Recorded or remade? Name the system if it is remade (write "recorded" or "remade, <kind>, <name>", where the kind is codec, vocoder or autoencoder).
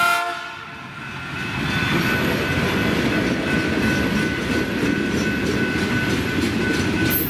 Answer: recorded